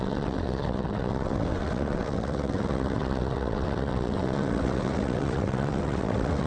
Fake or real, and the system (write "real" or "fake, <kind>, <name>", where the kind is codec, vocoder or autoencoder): fake, vocoder, WaveNeXt